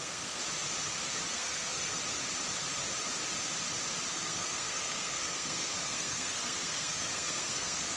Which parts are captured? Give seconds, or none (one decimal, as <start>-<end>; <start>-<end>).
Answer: 0.4-1.3; 1.9-4.1